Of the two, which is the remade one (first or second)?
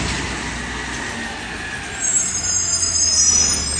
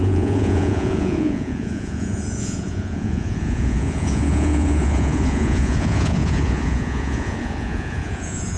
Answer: second